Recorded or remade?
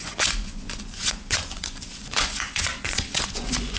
remade